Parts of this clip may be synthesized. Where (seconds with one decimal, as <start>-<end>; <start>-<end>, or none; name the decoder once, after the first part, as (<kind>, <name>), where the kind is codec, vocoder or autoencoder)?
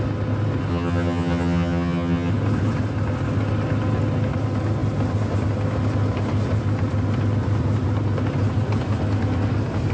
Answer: 0.7-2.3 (vocoder, HiFi-GAN)